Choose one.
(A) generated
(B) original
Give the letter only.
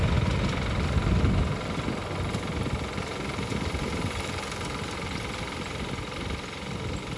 B